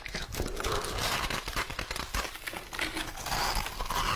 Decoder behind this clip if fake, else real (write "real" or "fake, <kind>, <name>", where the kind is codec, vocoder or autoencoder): real